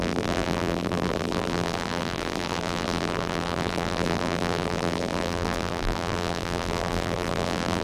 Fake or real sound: fake